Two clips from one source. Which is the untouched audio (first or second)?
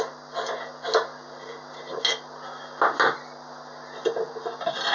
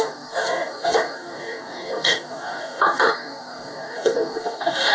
first